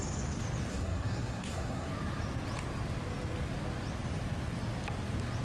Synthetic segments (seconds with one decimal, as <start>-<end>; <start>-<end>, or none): 0.7-1.9

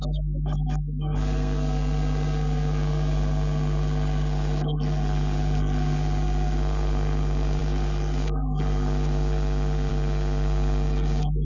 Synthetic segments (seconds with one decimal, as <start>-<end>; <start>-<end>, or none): 0.0-11.4

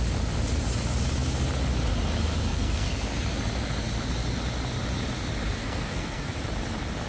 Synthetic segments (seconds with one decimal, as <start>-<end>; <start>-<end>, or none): 2.5-3.1; 5.6-6.3

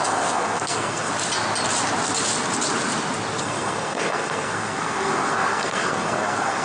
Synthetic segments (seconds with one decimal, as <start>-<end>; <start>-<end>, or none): 0.0-1.1; 3.4-6.6

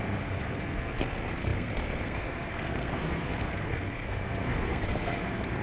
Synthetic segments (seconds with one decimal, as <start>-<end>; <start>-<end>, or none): 0.0-5.6